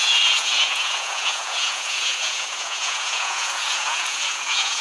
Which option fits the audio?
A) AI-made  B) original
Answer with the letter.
A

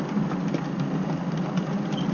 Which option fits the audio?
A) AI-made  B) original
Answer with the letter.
B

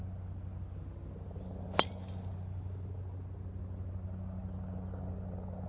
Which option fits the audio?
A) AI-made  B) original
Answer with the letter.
B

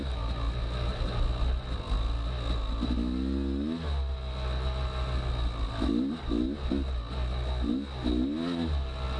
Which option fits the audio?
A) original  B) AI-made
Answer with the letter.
A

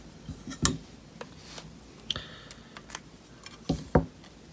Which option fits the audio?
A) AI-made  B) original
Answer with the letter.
B